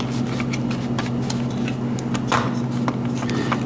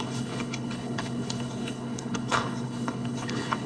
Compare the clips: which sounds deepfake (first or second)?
second